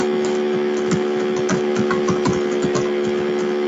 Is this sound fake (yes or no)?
no